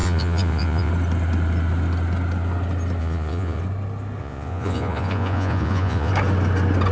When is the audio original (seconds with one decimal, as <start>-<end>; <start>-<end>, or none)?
0.9-3.0; 3.6-4.2; 6.1-6.9